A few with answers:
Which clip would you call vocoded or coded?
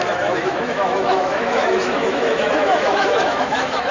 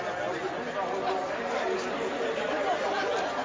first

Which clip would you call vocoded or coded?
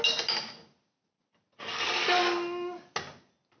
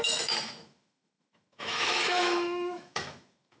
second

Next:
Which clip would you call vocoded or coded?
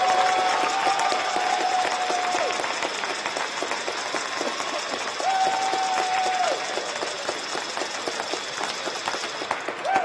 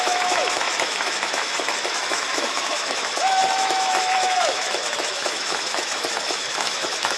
second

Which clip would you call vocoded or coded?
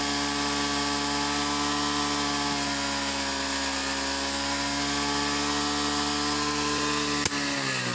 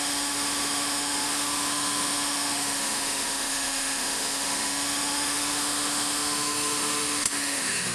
second